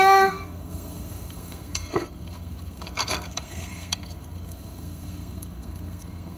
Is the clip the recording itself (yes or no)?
no